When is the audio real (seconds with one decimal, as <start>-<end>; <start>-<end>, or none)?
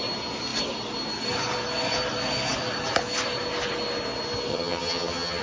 0.0-4.5